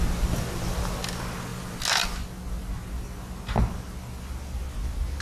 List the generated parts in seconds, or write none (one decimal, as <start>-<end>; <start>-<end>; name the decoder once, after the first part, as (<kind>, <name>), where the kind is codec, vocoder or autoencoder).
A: none